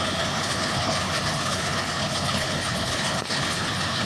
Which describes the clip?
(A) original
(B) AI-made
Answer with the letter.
B